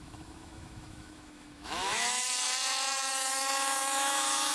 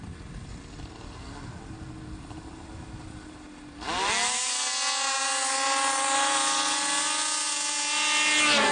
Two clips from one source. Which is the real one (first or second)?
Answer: second